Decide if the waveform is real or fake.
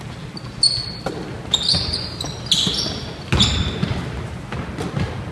real